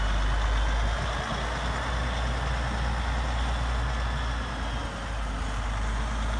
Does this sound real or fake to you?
real